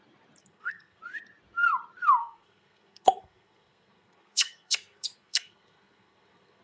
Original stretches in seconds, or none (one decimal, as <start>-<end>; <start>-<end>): 0.0-0.4; 1.0-2.2